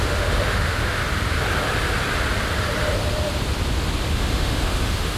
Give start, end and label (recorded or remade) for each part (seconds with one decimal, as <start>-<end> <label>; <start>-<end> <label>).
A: 0.0-1.0 remade; 1.0-4.1 recorded; 4.1-5.2 remade